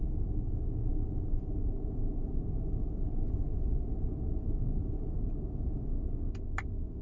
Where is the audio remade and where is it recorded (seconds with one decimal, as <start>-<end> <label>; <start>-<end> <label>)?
0.0-7.0 recorded